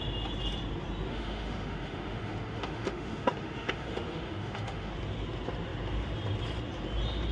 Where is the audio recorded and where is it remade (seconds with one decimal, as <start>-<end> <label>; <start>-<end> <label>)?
0.0-1.1 recorded; 1.1-4.9 remade; 4.9-7.3 recorded

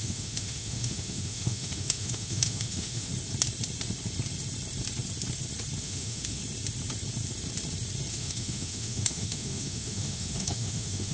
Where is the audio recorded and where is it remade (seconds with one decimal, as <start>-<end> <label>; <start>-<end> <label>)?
0.0-3.1 remade; 3.1-5.8 recorded; 5.8-6.4 remade; 6.4-8.1 recorded; 8.1-11.1 remade

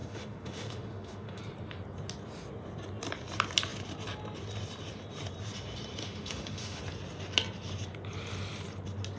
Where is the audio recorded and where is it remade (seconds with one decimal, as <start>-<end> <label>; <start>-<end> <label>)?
0.0-1.4 remade; 1.4-6.0 recorded; 6.0-6.8 remade; 6.8-9.2 recorded

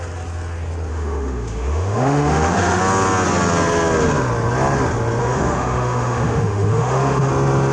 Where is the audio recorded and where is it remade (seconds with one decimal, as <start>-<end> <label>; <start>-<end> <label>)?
0.0-0.9 recorded; 0.9-2.8 remade; 2.8-5.2 recorded; 5.2-7.3 remade; 7.3-7.7 recorded

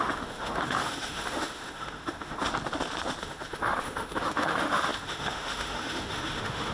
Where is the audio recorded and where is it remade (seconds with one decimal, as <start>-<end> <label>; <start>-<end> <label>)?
0.0-2.4 remade; 2.4-3.2 recorded; 3.2-6.7 remade

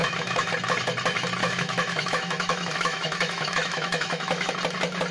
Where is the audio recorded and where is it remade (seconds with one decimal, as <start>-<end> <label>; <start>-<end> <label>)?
0.0-0.5 remade; 0.5-1.4 recorded; 1.4-4.5 remade; 4.5-5.1 recorded

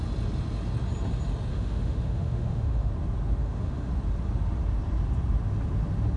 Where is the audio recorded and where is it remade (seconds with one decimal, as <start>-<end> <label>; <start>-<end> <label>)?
0.0-1.5 recorded; 1.5-2.9 remade; 2.9-3.4 recorded; 3.4-3.9 remade; 3.9-6.2 recorded

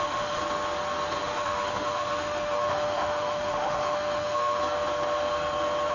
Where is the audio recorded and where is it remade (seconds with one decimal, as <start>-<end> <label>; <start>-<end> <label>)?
0.0-0.4 remade; 0.4-1.2 recorded; 1.2-4.6 remade; 4.6-5.9 recorded